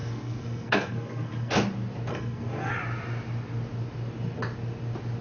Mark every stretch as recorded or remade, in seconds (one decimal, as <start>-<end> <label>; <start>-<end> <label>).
0.0-1.5 remade; 1.5-2.1 recorded; 2.1-2.7 remade; 2.7-5.2 recorded